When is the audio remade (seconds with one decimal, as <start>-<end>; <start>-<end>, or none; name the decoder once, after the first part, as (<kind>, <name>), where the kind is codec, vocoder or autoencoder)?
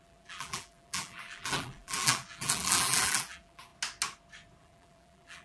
0.0-3.7 (vocoder, BigVGAN v2); 4.6-5.4